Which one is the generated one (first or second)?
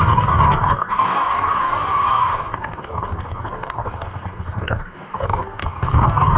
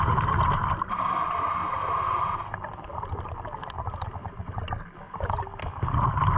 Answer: first